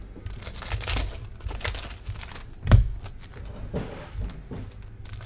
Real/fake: real